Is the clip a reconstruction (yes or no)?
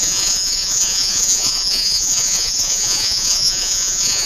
yes